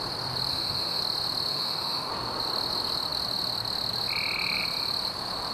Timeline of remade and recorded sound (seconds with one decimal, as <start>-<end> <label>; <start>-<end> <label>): 0.0-0.5 recorded; 0.5-1.0 remade; 1.0-1.5 recorded; 1.5-2.1 remade; 2.1-5.5 recorded